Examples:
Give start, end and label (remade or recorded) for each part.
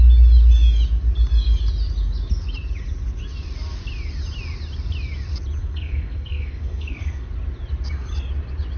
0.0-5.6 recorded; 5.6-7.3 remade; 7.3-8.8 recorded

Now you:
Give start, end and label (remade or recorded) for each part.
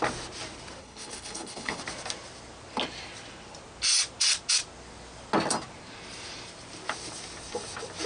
0.0-0.8 recorded; 0.8-1.8 remade; 1.8-8.1 recorded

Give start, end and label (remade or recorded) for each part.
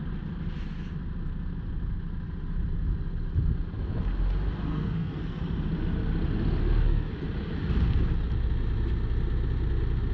0.0-4.7 recorded; 4.7-5.4 remade; 5.4-6.6 recorded; 6.6-7.1 remade; 7.1-10.1 recorded